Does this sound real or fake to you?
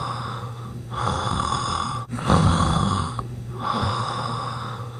fake